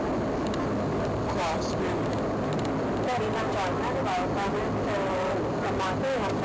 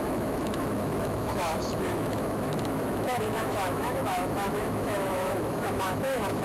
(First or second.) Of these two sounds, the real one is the first